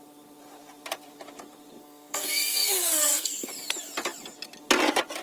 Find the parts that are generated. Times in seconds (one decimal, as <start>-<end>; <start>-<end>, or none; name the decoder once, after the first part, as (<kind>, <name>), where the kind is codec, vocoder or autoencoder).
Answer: 1.8-3.5 (codec, SNAC)